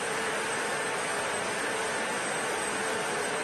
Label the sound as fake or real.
real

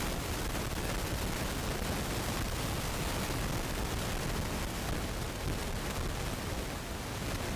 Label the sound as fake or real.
real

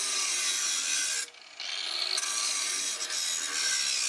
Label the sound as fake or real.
real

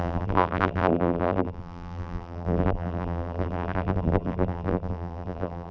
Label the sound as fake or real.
fake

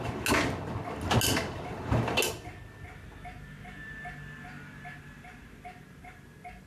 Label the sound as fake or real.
real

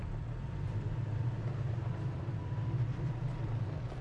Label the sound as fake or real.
fake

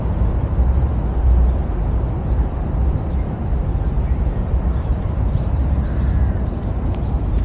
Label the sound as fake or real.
fake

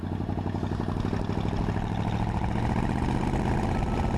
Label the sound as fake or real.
real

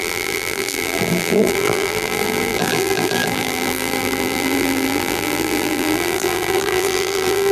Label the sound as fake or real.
fake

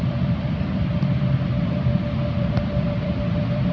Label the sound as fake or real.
fake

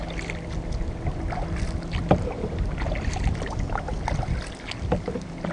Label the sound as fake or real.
real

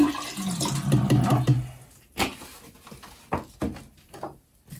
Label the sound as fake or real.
real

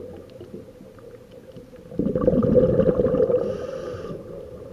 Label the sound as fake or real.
real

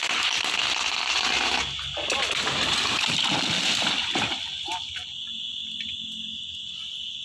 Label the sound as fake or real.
real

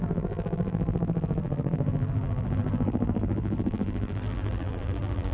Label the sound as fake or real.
fake